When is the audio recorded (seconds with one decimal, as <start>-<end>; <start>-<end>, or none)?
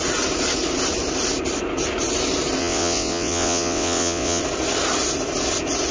0.0-2.6; 4.4-5.9